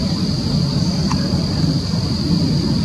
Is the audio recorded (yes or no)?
yes